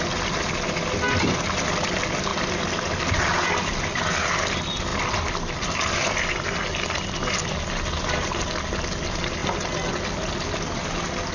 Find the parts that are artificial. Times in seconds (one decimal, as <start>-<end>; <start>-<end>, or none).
none